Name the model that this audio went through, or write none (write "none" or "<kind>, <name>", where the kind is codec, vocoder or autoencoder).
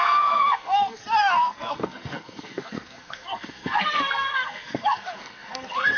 codec, SNAC